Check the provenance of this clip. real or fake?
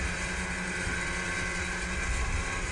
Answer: real